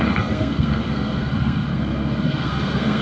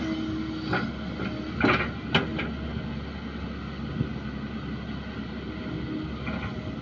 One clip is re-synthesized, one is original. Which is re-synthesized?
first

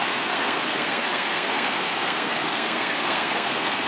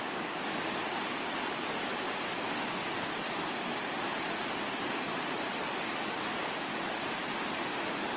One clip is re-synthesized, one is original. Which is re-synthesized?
first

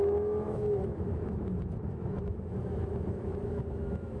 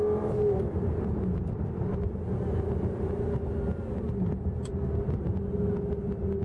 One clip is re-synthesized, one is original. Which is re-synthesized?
first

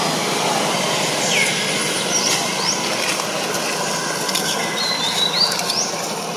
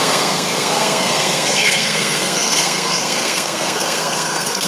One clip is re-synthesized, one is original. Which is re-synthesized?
second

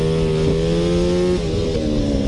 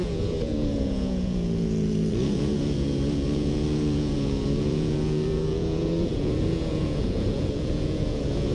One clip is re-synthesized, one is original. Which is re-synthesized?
second